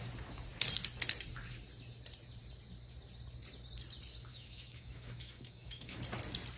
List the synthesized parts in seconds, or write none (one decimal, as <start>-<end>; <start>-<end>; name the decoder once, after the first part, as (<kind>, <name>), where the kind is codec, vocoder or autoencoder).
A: 4.3-6.0 (autoencoder, DAC-VAE)